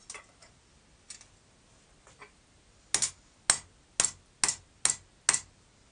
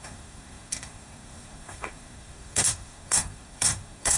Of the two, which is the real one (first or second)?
first